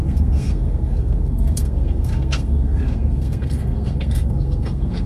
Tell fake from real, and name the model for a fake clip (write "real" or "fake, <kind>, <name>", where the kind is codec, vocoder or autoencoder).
fake, codec, SNAC